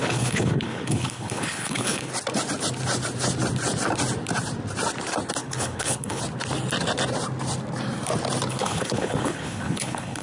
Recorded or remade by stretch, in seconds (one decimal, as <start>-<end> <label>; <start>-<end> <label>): 0.0-2.1 remade; 2.1-5.4 recorded; 5.4-6.2 remade; 6.2-8.5 recorded; 8.5-10.2 remade